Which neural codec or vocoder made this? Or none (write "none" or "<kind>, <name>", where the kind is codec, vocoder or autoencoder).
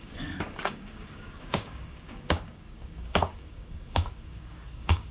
codec, DAC